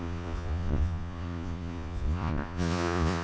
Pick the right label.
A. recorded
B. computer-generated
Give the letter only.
B